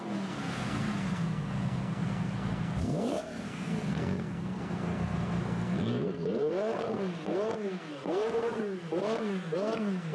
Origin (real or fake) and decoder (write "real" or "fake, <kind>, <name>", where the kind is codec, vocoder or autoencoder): fake, codec, SNAC